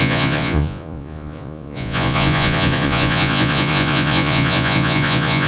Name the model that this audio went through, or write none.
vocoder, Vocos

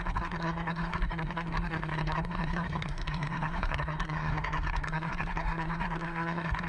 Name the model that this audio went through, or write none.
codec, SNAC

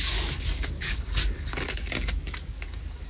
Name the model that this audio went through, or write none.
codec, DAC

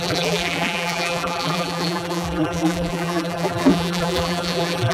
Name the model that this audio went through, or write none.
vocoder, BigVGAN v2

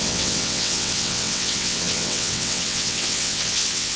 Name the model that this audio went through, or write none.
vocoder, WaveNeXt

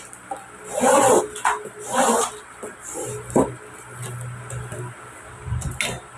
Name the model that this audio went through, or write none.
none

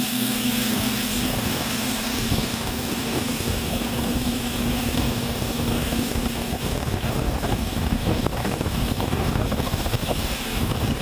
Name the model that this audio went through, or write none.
codec, DAC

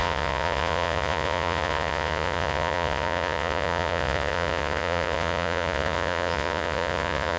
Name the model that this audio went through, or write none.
vocoder, Vocos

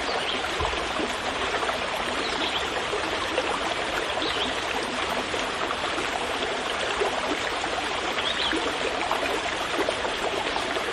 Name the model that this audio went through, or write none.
vocoder, BigVGAN v2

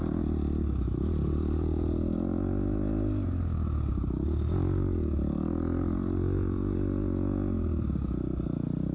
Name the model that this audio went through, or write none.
none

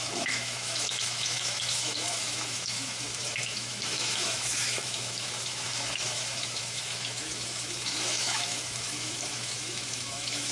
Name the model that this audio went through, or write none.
autoencoder, DAC-VAE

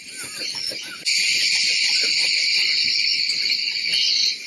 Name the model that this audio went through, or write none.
none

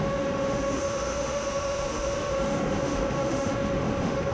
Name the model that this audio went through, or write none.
autoencoder, DAC-VAE